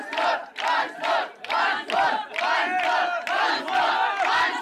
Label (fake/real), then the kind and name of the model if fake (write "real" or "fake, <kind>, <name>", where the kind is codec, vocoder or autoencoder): real